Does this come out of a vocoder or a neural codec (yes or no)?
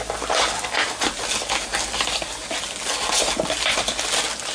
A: no